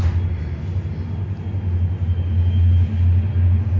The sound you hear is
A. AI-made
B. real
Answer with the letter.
B